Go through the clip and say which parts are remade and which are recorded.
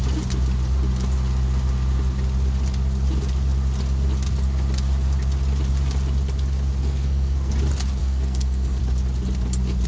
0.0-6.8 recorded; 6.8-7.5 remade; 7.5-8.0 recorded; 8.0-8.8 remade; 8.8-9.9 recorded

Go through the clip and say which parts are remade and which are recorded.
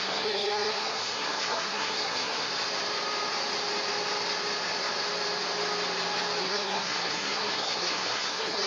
0.0-2.5 remade; 2.5-6.4 recorded; 6.4-8.7 remade